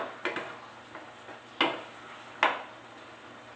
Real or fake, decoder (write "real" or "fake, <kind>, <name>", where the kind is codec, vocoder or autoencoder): real